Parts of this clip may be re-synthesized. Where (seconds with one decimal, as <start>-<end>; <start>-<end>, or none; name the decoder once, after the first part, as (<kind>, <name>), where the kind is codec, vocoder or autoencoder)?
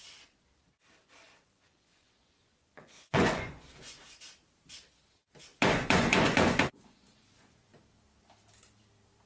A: 1.0-4.0 (vocoder, Vocos); 5.5-7.7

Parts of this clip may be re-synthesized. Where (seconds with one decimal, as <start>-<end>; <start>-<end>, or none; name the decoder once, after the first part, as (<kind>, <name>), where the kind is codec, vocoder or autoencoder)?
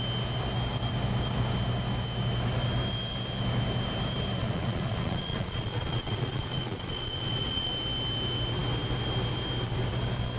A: 4.4-7.7 (vocoder, Vocos)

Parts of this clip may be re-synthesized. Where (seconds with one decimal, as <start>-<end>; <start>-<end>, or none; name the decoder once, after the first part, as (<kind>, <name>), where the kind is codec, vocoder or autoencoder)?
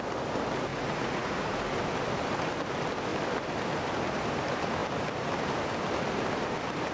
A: 0.7-1.6 (vocoder, Vocos)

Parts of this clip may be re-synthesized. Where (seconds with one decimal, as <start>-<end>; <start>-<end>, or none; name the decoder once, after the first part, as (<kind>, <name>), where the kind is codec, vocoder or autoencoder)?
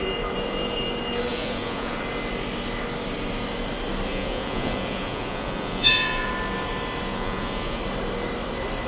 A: 1.3-2.0 (vocoder, Vocos); 4.1-6.3; 7.1-7.8